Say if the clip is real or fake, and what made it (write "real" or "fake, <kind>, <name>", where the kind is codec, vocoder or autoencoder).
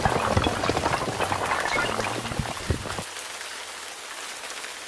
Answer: real